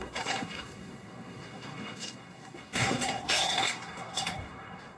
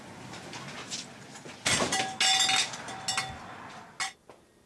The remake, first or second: first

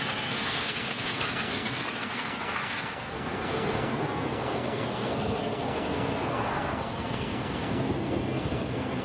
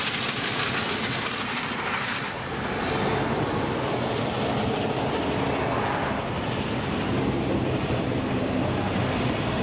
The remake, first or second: first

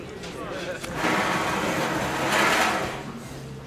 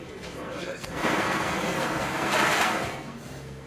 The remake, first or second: second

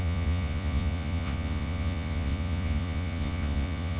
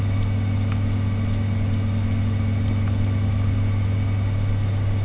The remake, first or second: first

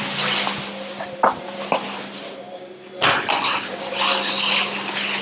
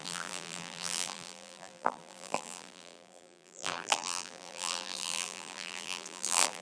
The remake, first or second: second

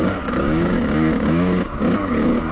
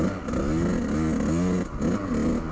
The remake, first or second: first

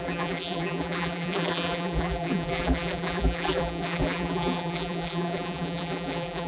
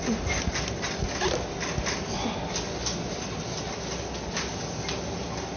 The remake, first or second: first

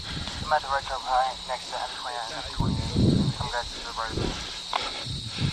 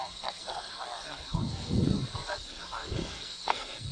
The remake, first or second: second